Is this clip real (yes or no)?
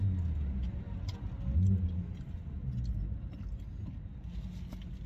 yes